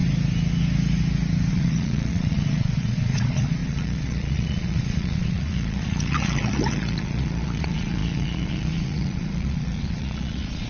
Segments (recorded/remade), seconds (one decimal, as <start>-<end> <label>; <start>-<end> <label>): 0.0-1.5 recorded; 1.5-10.7 remade